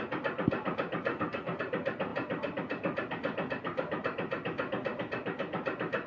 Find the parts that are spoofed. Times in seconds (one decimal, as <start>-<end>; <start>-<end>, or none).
1.1-1.6